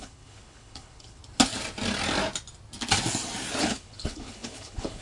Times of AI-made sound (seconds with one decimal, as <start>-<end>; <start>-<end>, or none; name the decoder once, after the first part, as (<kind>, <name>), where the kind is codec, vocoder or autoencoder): 0.0-1.2 (codec, HILCodec); 3.6-5.0

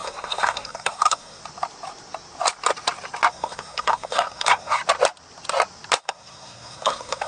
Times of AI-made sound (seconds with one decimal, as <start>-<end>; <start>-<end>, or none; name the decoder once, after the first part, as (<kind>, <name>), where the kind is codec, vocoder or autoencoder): 0.0-1.4 (codec, SNAC); 3.3-4.8; 6.0-7.3

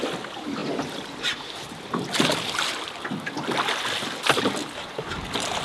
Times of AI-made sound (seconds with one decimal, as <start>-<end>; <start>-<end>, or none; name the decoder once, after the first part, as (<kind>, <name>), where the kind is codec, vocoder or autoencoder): 0.6-2.7 (vocoder, BigVGAN v2)